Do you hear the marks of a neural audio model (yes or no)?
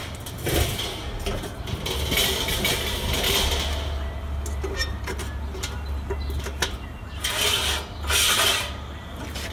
no